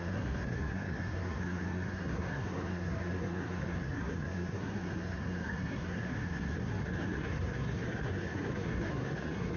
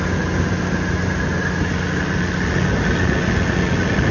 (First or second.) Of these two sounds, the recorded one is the second